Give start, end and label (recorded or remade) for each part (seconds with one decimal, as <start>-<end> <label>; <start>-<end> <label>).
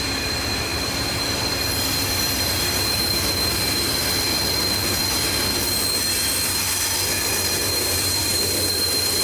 0.0-3.9 remade; 3.9-4.5 recorded; 4.5-5.0 remade; 5.0-7.3 recorded; 7.3-9.2 remade